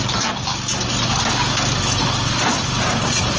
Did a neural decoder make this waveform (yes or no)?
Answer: no